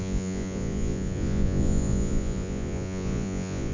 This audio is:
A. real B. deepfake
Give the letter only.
B